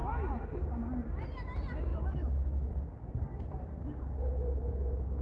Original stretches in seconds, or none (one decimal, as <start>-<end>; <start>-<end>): 0.0-1.9; 2.7-5.2